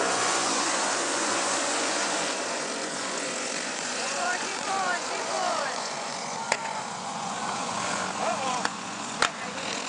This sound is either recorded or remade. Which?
remade